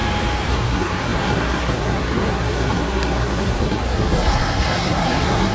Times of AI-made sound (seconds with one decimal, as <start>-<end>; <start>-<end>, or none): 0.5-5.5